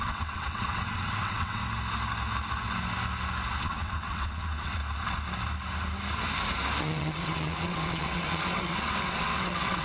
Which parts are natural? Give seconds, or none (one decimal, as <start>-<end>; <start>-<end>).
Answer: 1.6-3.6; 4.8-6.8